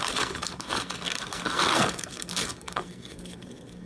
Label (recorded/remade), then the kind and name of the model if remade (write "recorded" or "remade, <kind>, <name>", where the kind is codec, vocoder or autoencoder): remade, codec, SNAC